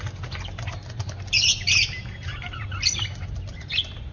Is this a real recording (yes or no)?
yes